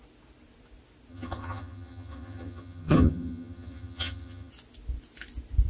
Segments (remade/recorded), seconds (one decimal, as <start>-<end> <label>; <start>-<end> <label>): 0.0-1.1 recorded; 1.1-4.5 remade; 4.5-5.7 recorded